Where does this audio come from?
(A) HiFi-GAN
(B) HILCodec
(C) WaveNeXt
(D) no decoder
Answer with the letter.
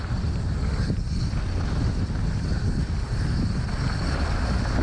D